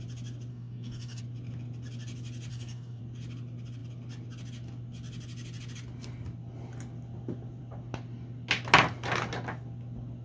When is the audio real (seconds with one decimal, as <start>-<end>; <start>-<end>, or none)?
0.0-0.5; 1.2-2.5; 3.0-10.2